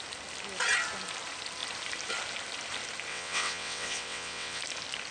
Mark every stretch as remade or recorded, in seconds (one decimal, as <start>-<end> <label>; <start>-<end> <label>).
0.0-3.1 recorded; 3.1-4.6 remade; 4.6-5.1 recorded